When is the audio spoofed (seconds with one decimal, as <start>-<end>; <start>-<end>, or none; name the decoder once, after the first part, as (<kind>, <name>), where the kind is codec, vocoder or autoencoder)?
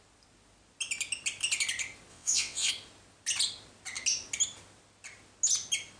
2.1-2.7 (vocoder, WaveNeXt)